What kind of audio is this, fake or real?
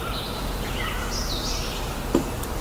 real